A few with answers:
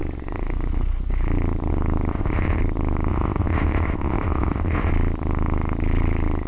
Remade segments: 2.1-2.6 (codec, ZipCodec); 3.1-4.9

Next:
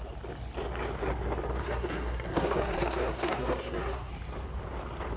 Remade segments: 1.6-4.1 (codec, SNAC)

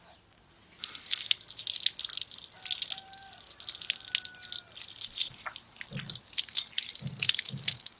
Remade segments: none

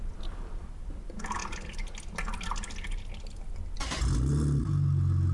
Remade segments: none

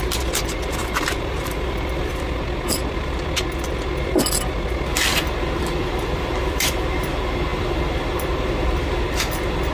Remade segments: 0.8-3.7 (vocoder, BigVGAN v2); 5.1-6.7; 7.5-9.2

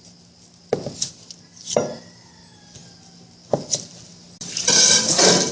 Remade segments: none

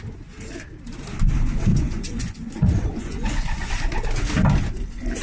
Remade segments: 1.7-3.7 (vocoder, Vocos)

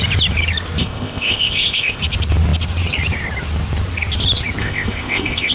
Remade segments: 0.8-2.0 (codec, ZipCodec); 4.6-5.5